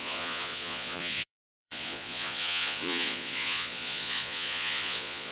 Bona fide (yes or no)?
no